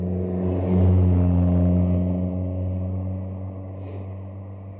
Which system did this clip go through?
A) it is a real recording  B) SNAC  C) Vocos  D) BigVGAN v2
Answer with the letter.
A